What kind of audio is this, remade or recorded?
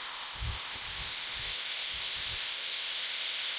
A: remade